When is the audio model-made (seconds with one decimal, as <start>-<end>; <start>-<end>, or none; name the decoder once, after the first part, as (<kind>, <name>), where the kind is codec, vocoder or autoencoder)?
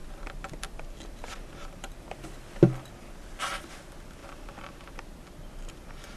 none